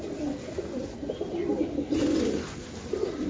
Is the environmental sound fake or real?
real